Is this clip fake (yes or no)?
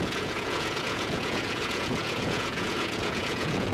yes